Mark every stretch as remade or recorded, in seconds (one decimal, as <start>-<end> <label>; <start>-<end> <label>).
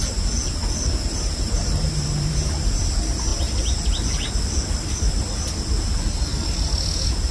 0.0-1.1 recorded; 1.1-2.7 remade; 2.7-7.3 recorded